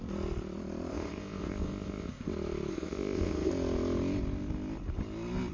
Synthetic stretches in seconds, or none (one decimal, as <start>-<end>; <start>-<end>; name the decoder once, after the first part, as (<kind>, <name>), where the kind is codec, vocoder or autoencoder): 0.9-2.3 (codec, ZipCodec); 2.7-3.5